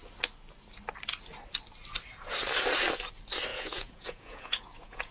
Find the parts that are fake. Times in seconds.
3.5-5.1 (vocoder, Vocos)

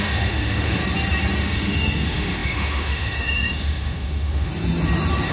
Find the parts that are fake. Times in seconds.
0.0-0.8 (autoencoder, DAC-VAE); 1.4-4.5

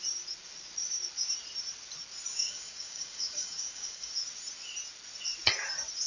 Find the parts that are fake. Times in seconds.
2.3-4.1 (codec, DAC)

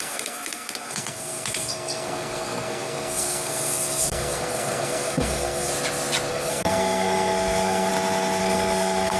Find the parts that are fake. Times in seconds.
0.0-5.7 (codec, SNAC); 6.3-7.9; 8.4-9.2

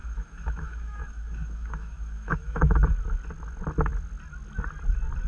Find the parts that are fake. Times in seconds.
0.0-2.9 (autoencoder, DAC-VAE)

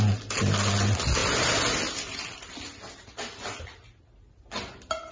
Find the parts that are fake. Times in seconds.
none

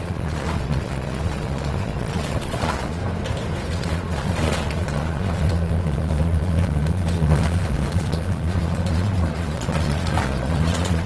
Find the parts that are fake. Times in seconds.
0.0-3.0 (vocoder, Vocos); 3.7-11.1